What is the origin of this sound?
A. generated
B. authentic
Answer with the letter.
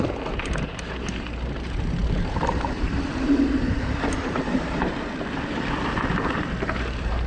A